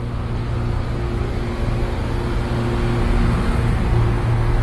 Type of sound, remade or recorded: recorded